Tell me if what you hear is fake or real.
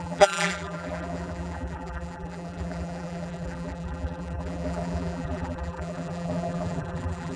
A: fake